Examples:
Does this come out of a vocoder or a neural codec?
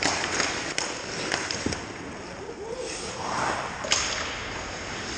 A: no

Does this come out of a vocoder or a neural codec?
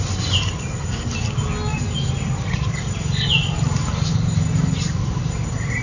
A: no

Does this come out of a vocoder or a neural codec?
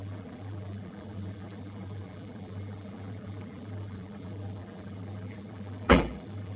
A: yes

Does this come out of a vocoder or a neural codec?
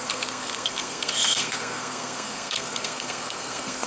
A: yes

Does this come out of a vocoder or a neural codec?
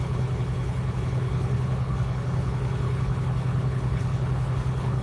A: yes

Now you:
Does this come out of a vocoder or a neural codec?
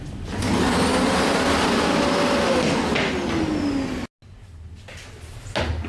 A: no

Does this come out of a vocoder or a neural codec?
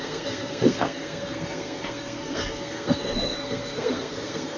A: yes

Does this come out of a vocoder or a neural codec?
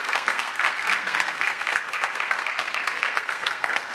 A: yes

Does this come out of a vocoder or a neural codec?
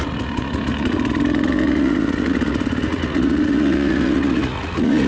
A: yes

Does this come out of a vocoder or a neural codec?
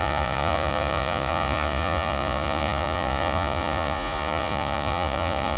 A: yes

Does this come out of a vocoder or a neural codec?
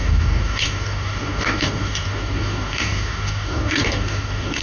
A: yes